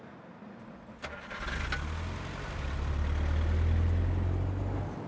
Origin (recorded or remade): recorded